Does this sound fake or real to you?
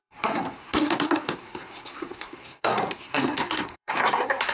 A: fake